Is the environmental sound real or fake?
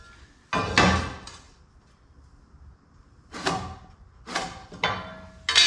real